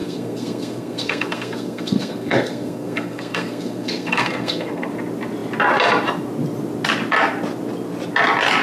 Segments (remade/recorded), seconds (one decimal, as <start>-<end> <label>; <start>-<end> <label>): 0.0-4.9 remade; 4.9-8.6 recorded